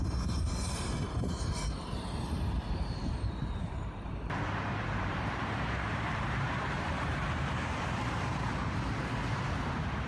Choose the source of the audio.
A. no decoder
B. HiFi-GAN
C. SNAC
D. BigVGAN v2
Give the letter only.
D